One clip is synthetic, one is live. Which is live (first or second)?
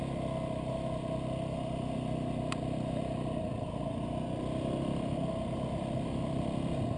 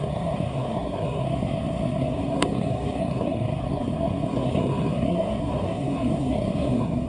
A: first